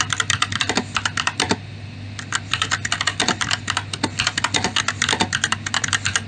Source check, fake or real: real